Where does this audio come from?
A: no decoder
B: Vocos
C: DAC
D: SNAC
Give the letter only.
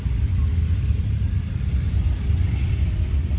A